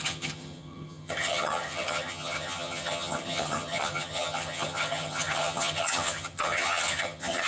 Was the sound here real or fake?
fake